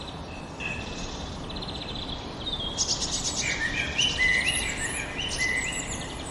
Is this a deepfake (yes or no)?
no